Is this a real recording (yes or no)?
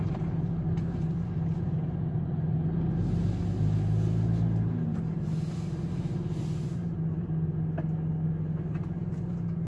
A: yes